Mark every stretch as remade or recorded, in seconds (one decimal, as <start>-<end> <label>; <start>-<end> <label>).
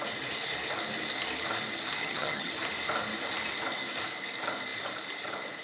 0.0-2.0 recorded; 2.0-2.5 remade; 2.5-5.6 recorded